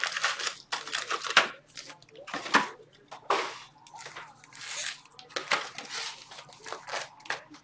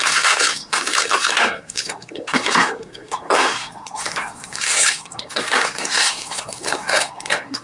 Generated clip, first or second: second